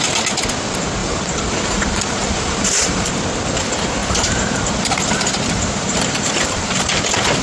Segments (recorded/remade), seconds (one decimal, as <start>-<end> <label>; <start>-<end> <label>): 0.0-1.0 recorded; 1.0-3.1 remade; 3.1-4.0 recorded; 4.0-7.0 remade; 7.0-7.4 recorded